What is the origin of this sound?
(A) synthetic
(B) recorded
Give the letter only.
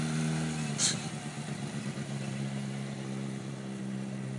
B